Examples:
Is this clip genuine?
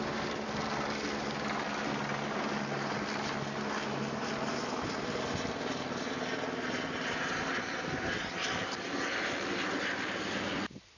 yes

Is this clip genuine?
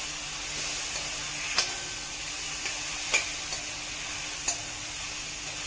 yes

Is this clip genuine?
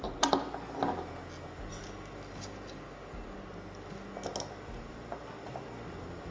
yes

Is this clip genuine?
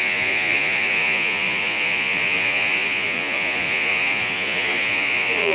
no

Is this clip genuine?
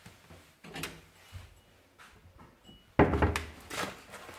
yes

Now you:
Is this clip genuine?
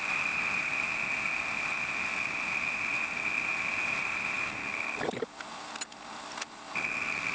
yes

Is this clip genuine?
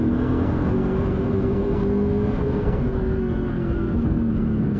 no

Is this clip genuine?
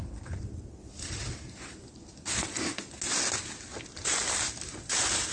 yes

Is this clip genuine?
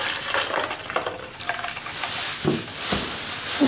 yes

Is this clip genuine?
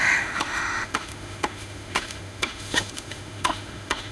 no